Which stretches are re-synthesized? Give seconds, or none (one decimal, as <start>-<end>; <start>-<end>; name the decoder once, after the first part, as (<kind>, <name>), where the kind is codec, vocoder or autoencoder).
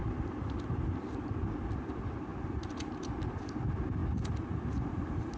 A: none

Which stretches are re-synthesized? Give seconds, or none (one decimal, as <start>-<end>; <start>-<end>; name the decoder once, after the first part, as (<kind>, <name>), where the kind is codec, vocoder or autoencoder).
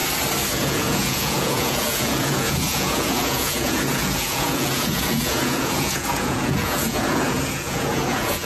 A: 0.5-8.4 (vocoder, Vocos)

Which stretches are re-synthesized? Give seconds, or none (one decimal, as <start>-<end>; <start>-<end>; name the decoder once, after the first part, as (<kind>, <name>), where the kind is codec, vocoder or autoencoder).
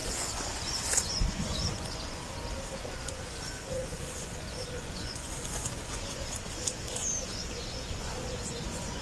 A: 0.0-2.2 (vocoder, Vocos); 2.8-9.0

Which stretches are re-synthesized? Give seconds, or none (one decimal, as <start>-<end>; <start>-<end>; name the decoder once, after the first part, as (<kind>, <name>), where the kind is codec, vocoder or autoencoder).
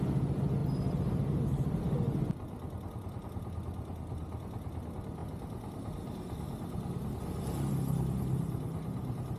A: none